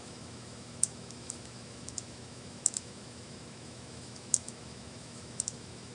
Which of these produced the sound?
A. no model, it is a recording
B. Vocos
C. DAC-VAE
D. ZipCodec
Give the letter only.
C